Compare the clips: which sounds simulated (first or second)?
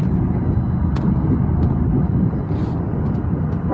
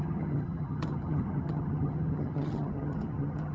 second